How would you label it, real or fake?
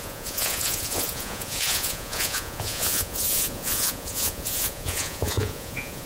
fake